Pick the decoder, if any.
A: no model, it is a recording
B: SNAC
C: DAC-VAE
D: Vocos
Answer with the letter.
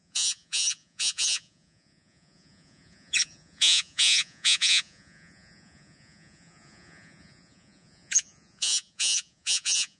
D